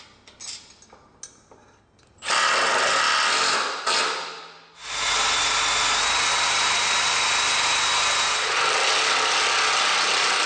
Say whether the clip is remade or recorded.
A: recorded